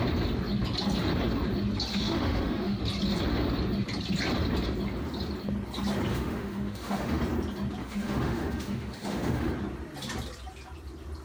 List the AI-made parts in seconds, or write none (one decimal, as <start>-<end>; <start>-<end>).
1.9-2.8; 6.1-7.2; 7.8-9.5

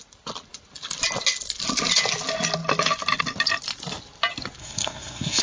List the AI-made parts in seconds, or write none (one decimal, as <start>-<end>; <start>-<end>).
4.6-5.4

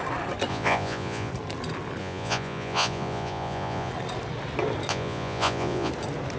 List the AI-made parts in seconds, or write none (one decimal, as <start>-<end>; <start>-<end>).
0.5-1.3; 2.0-3.9; 4.9-5.9

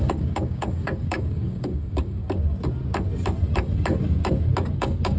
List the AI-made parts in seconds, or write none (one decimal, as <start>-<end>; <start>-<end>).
0.0-2.2; 4.8-5.2

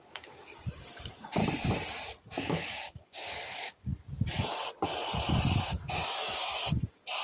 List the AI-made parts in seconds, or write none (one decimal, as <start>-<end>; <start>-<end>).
0.0-1.4; 2.4-3.9; 5.6-7.2

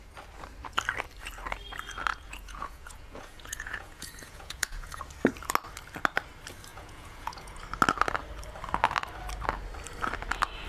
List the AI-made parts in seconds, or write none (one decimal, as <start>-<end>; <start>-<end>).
2.1-5.0; 6.7-7.6

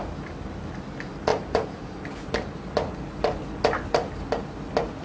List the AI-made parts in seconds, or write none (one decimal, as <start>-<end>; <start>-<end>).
1.3-2.6

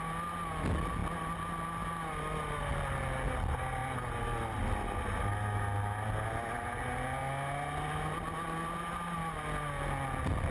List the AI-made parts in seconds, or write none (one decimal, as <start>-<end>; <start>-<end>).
none